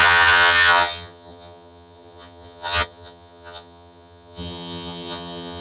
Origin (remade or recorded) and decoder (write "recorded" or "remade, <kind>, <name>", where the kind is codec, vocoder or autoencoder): remade, vocoder, HiFi-GAN